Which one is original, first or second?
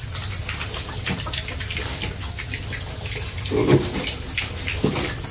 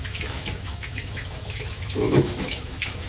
first